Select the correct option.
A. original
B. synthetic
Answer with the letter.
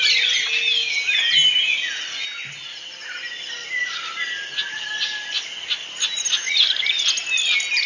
A